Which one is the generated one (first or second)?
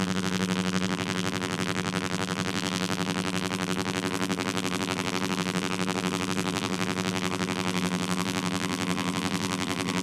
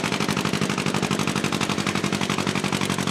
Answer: first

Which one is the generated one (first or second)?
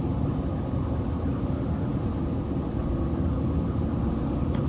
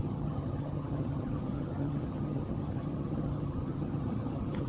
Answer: second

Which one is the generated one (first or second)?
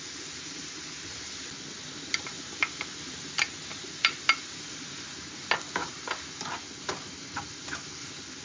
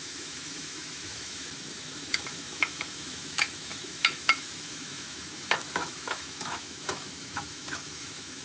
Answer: second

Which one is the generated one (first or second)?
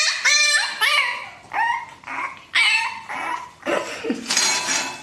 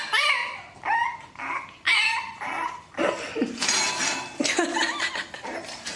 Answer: second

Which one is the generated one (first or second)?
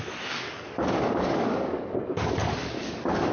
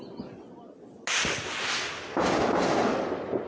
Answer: first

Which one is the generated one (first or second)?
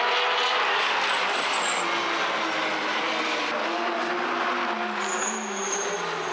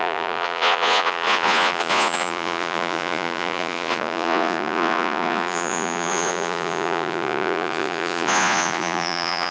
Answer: second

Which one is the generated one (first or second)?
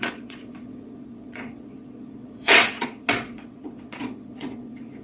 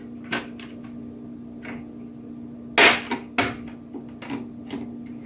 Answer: first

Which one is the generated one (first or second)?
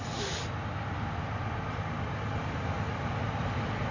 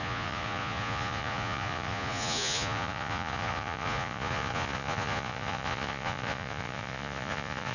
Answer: second